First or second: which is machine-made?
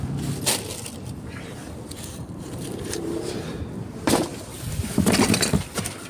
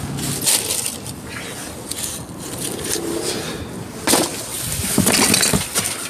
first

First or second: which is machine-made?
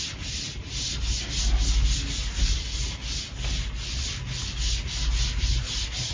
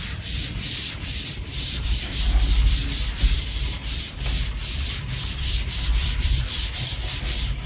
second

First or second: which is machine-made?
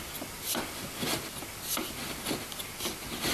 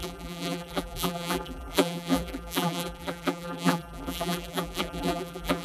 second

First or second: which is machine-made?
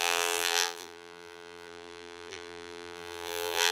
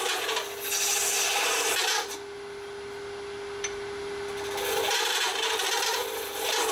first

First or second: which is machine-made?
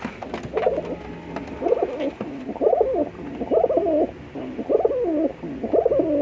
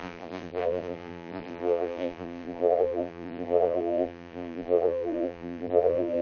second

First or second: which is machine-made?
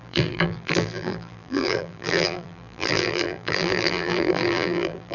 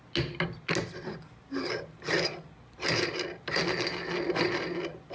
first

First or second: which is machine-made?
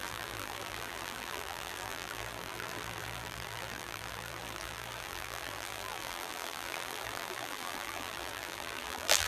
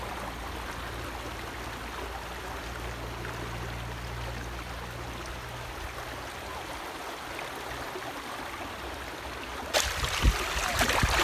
first